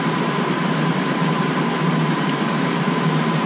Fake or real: fake